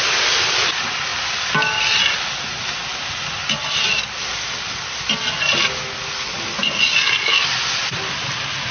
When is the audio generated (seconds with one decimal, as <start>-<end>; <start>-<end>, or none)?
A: none